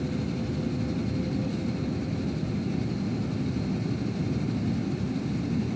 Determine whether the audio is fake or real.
real